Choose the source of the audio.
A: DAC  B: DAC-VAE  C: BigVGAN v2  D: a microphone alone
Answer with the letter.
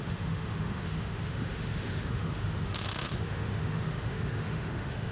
B